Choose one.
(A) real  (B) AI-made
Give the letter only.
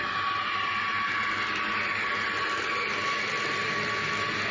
A